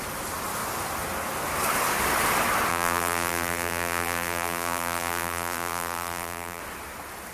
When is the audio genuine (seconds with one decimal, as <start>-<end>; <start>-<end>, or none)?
0.0-2.7; 6.6-7.3